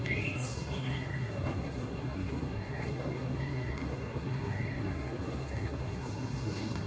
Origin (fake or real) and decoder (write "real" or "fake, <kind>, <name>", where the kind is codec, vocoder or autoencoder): fake, codec, SNAC